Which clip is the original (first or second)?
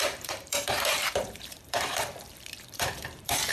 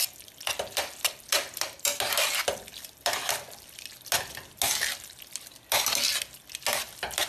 second